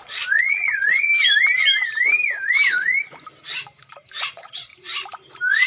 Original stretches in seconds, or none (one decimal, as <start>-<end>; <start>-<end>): 1.1-4.2; 4.7-5.7